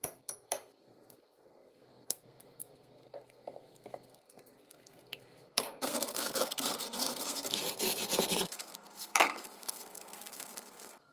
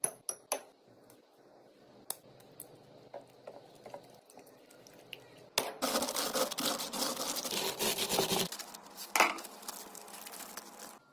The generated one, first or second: first